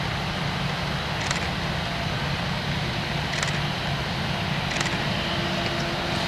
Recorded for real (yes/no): yes